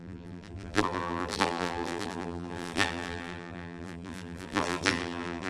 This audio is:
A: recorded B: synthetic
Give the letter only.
B